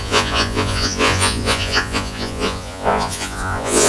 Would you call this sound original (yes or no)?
no